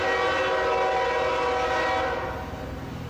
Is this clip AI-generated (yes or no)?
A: no